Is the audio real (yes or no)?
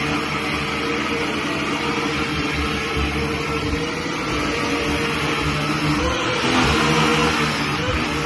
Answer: yes